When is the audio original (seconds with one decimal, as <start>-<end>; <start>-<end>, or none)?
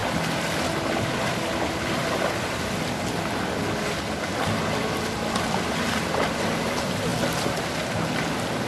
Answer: 0.0-8.7